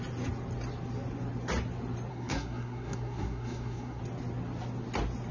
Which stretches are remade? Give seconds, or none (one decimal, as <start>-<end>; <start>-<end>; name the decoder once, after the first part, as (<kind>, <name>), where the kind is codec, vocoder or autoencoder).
2.1-4.0 (codec, SNAC)